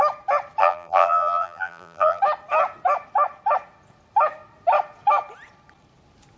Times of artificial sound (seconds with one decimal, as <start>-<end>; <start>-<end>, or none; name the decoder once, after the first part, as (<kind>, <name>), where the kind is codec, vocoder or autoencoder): 0.6-2.2 (vocoder, BigVGAN v2)